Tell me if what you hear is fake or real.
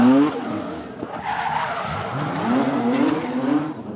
fake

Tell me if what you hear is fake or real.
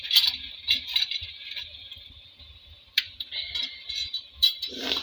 fake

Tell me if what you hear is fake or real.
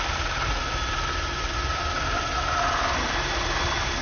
fake